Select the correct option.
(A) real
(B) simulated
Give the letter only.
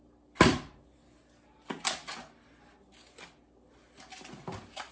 A